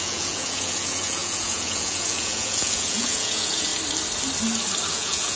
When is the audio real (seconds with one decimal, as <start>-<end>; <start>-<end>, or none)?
3.7-4.9